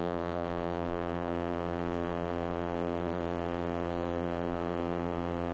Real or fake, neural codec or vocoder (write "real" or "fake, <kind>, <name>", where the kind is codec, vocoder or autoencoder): fake, vocoder, BigVGAN v2